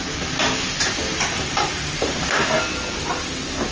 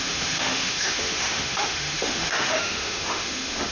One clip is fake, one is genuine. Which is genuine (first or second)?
first